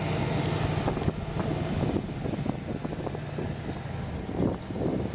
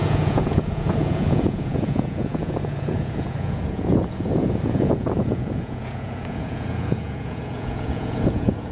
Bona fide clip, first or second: first